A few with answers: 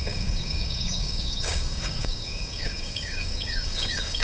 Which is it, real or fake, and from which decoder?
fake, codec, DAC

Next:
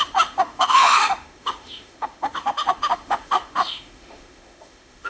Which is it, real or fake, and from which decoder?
fake, autoencoder, DAC-VAE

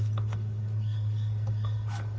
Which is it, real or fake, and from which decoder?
fake, codec, SNAC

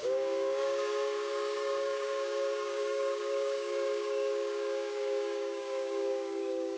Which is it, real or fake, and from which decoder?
fake, codec, DAC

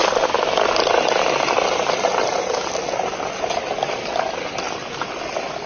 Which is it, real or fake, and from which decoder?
real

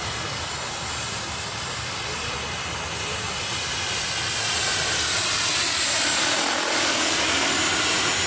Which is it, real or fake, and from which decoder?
real